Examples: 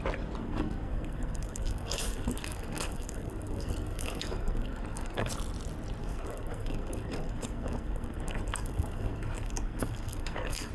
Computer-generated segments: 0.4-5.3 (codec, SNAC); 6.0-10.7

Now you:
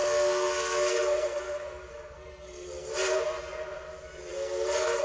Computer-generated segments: 0.0-2.9 (codec, SNAC); 4.3-5.0

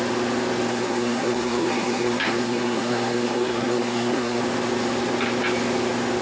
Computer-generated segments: 0.7-4.4 (codec, SNAC)

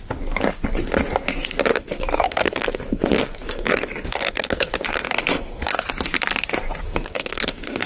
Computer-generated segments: 1.7-5.7 (codec, SNAC); 6.9-7.9

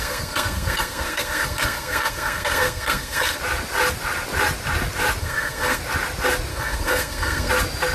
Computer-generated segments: 0.0-3.4 (codec, SNAC); 5.2-5.8; 6.5-7.5

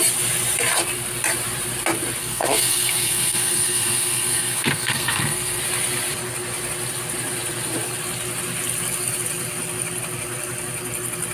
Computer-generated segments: 2.2-5.6 (codec, SNAC)

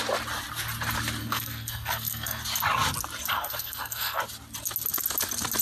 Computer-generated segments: 1.2-2.4 (codec, SNAC); 3.3-4.2